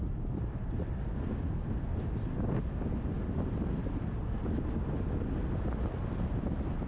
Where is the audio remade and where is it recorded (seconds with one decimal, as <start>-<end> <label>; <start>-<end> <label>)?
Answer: 0.0-6.9 recorded

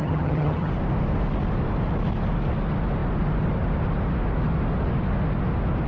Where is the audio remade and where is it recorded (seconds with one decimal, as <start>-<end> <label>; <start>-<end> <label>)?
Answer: 0.0-0.7 remade; 0.7-5.9 recorded